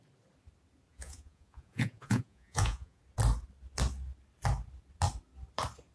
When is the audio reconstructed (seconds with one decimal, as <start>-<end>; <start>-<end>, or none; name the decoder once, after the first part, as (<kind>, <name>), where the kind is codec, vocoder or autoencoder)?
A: 0.9-3.0 (vocoder, Vocos)